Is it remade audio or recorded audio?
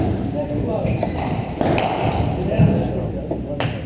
recorded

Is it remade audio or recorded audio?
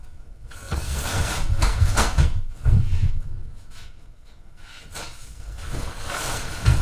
remade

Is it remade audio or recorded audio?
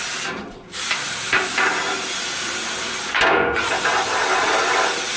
recorded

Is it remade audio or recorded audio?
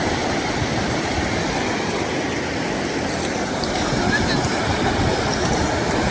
recorded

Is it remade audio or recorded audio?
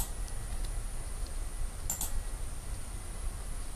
recorded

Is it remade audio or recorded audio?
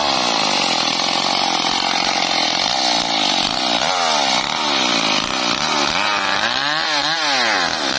recorded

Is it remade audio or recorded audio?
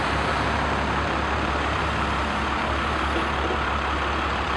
remade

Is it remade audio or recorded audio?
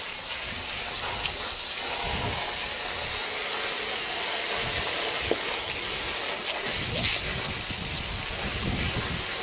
recorded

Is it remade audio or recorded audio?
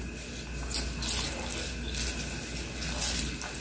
recorded